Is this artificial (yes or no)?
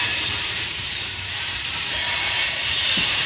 yes